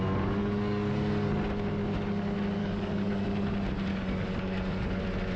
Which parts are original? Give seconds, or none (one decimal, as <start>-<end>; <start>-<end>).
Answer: 0.0-0.4; 0.9-2.6; 3.2-3.9; 5.0-5.4